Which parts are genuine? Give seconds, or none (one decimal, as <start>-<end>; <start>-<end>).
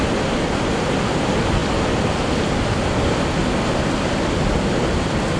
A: 0.0-5.4